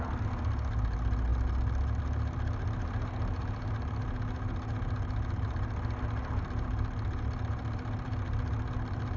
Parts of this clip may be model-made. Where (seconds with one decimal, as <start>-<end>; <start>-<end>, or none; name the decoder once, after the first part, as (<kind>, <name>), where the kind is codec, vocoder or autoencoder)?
none